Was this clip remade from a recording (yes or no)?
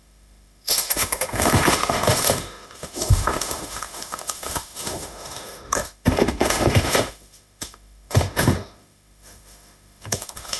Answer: yes